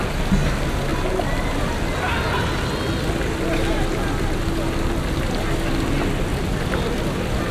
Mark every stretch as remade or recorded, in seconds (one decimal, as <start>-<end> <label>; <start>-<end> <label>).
0.0-7.5 recorded